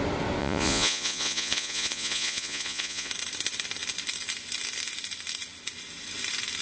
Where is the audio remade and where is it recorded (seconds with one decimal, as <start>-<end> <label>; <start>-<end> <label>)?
0.0-0.4 recorded; 0.4-3.1 remade; 3.1-6.6 recorded